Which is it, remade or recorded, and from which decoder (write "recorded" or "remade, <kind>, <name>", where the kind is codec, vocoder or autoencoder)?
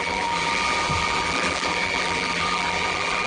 remade, vocoder, BigVGAN v2